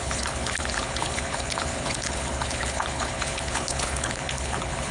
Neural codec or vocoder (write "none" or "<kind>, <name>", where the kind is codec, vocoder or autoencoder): codec, HILCodec